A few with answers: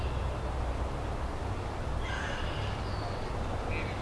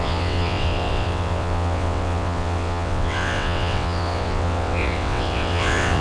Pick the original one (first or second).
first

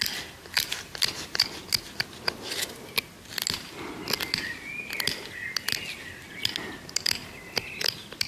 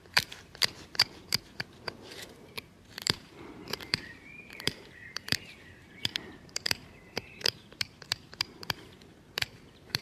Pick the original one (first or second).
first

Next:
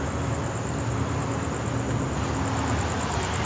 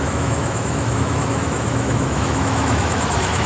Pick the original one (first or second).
first